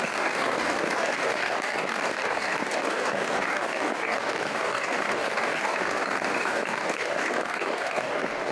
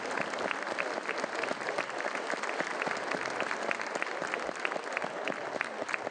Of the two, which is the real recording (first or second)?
second